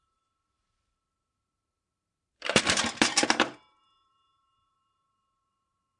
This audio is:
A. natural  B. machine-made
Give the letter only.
B